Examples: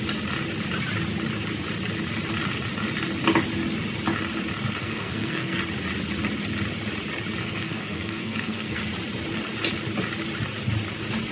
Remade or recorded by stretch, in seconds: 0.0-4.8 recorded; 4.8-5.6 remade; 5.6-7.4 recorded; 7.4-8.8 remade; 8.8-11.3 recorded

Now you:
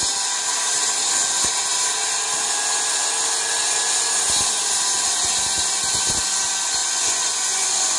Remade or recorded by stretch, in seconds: 0.0-6.8 recorded; 6.8-8.0 remade

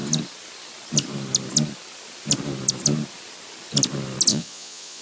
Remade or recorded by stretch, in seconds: 0.0-4.3 recorded; 4.3-5.0 remade

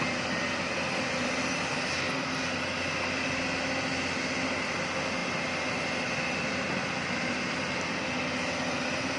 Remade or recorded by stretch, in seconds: 0.0-1.7 recorded; 1.7-2.3 remade; 2.3-5.2 recorded; 5.2-7.5 remade; 7.5-9.2 recorded

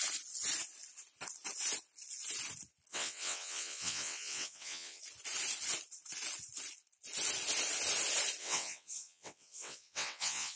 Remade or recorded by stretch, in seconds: 0.0-2.9 recorded; 2.9-5.0 remade; 5.0-8.4 recorded; 8.4-10.6 remade

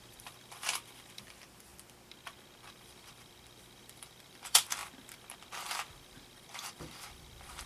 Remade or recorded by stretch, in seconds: 0.0-1.7 remade; 1.7-2.7 recorded; 2.7-4.8 remade; 4.8-5.9 recorded; 5.9-7.7 remade

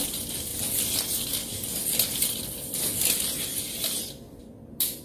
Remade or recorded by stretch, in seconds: 0.0-0.5 remade; 0.5-2.2 recorded; 2.2-3.5 remade; 3.5-4.4 recorded; 4.4-5.0 remade